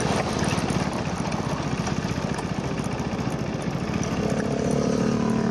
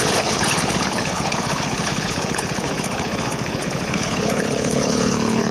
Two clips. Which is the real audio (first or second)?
first